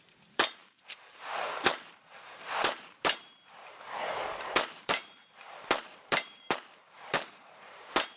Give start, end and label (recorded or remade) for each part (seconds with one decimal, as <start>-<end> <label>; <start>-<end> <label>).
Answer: 0.0-8.2 remade